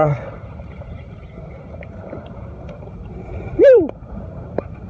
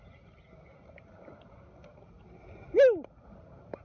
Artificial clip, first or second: first